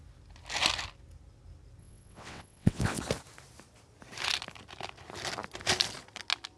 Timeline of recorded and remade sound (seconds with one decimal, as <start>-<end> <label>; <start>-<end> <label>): 0.0-1.8 recorded; 1.8-3.0 remade; 3.0-6.6 recorded